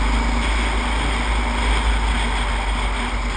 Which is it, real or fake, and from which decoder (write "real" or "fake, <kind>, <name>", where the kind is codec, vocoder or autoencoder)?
real